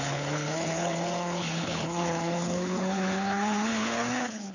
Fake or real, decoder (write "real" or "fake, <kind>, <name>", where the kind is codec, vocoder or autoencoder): fake, codec, HILCodec